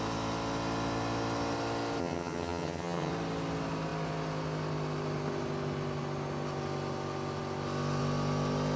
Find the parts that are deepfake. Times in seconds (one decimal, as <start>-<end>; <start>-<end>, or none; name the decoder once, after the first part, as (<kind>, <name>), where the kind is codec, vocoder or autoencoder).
2.0-3.1 (vocoder, HiFi-GAN)